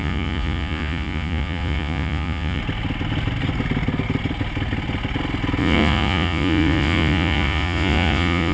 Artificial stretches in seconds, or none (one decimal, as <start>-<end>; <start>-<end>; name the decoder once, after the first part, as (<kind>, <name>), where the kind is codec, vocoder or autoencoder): 0.0-2.6 (vocoder, Vocos); 5.6-8.5